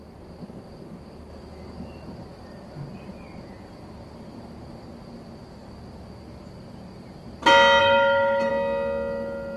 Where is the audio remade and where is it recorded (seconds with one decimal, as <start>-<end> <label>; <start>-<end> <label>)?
0.0-7.8 recorded; 7.8-8.5 remade; 8.5-9.6 recorded